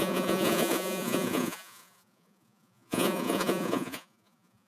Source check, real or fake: fake